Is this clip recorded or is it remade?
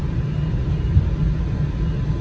recorded